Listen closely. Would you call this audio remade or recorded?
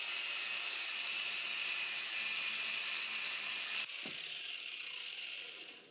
recorded